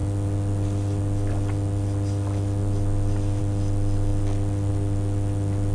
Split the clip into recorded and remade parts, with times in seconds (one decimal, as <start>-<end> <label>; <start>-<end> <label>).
0.0-5.7 recorded